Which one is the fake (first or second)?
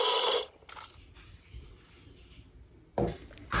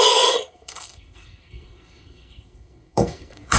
second